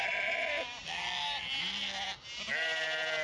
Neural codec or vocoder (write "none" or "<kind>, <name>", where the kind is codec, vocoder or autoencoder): none